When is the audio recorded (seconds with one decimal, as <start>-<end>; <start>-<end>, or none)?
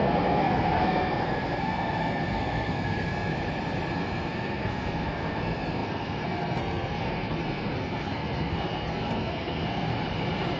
3.3-3.9; 9.9-10.6